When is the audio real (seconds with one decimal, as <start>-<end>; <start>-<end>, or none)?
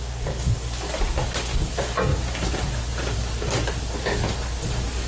0.0-5.1